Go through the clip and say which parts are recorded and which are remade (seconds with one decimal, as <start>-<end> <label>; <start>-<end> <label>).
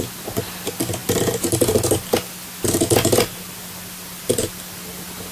0.0-5.3 recorded